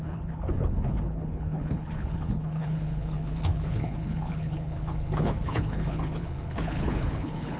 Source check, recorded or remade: remade